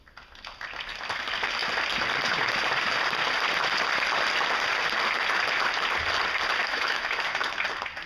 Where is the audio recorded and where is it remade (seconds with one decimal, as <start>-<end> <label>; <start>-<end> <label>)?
0.0-6.6 recorded; 6.6-7.2 remade; 7.2-8.1 recorded